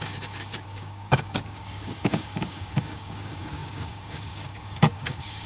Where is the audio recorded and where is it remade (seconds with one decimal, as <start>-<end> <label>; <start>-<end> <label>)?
0.0-5.5 remade